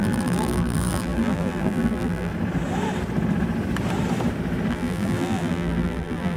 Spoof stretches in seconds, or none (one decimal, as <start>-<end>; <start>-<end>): 0.0-2.3; 4.7-6.4